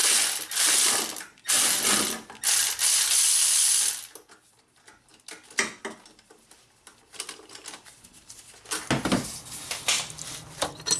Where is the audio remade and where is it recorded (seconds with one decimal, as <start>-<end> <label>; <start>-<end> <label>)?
0.0-11.0 recorded